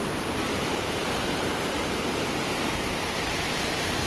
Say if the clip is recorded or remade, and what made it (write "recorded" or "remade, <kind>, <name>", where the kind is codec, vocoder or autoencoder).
remade, vocoder, BigVGAN v2